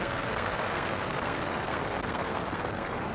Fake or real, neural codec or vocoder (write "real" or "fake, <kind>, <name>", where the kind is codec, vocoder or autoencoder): fake, codec, SNAC